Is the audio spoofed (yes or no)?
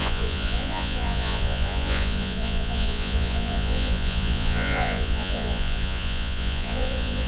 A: yes